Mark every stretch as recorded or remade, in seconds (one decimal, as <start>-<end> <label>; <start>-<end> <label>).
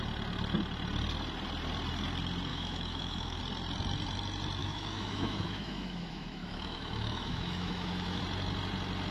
0.0-2.5 recorded; 2.5-3.4 remade; 3.4-4.6 recorded; 4.6-8.2 remade; 8.2-9.1 recorded